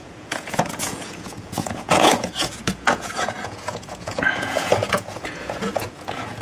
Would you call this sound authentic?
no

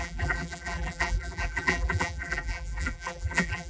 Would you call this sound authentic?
no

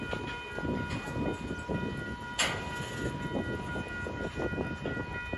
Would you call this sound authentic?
yes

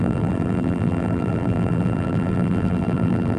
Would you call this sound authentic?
no